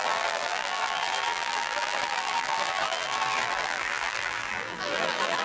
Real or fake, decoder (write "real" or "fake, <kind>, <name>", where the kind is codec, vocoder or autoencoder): fake, vocoder, BigVGAN v2